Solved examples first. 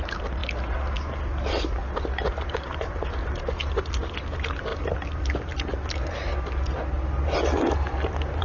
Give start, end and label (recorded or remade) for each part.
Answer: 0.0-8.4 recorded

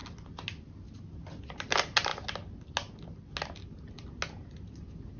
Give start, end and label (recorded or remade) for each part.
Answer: 0.0-5.2 recorded

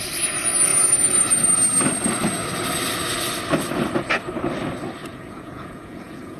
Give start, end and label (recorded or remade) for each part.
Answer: 0.0-5.0 recorded; 5.0-6.4 remade

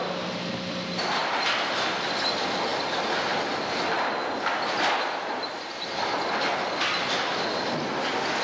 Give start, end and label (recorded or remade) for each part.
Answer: 0.0-8.4 recorded

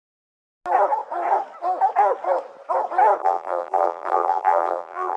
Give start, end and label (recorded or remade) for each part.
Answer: 0.0-3.2 recorded; 3.2-5.2 remade